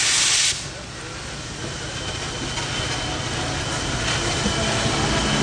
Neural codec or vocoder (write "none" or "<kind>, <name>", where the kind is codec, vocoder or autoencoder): none